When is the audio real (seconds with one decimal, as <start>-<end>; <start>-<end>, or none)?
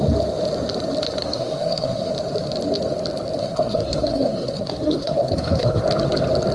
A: 0.0-1.2; 2.1-3.4; 5.8-6.5